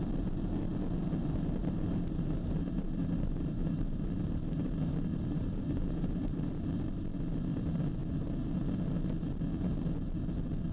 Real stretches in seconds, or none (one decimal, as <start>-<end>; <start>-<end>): 0.0-1.6; 6.5-10.7